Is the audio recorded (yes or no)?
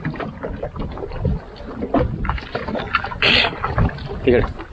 yes